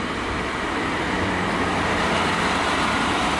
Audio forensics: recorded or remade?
remade